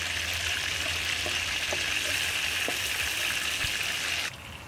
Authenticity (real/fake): real